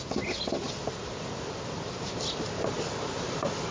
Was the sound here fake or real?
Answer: real